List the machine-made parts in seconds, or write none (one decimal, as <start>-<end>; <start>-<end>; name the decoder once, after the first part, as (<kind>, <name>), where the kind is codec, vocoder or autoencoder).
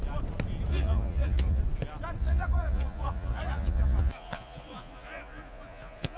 0.7-1.6 (vocoder, Vocos); 2.2-6.2